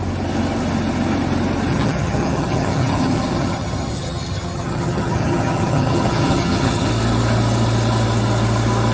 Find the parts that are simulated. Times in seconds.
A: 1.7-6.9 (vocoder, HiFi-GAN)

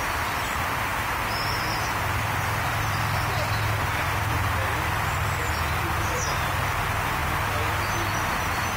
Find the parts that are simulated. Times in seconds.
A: 0.0-7.2 (vocoder, BigVGAN v2); 8.4-8.8

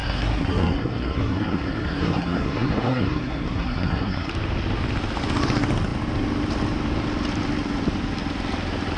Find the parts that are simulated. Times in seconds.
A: 0.0-4.3 (codec, SNAC)

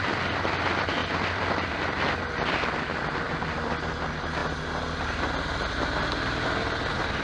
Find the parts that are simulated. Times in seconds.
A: 1.0-1.7 (vocoder, BigVGAN v2)

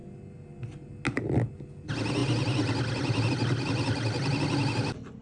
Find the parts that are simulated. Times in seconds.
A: none

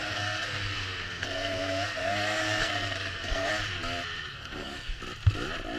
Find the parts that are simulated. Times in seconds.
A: 0.0-3.5 (codec, SNAC); 4.3-5.0